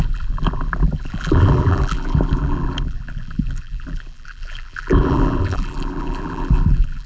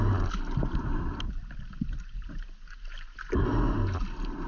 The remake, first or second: first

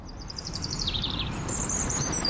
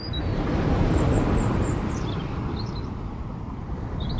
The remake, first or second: first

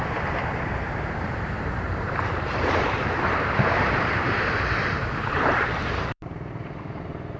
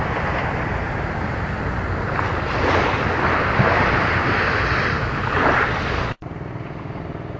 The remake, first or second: first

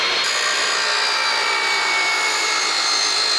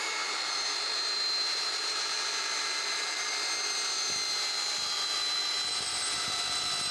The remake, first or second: second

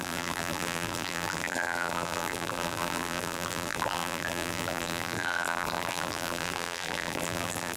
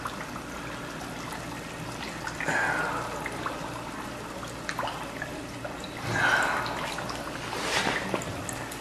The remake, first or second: first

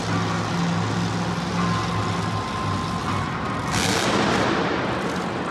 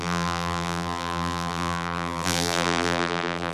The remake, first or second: second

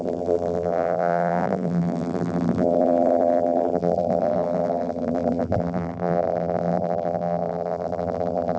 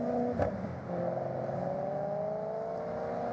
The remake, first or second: first